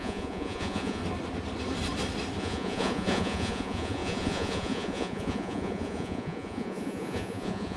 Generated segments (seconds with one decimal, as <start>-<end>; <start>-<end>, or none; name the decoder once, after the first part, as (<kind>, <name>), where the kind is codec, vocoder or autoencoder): 0.0-1.0 (vocoder, Vocos); 2.4-7.8